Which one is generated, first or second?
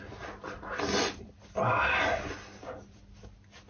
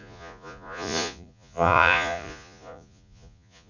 second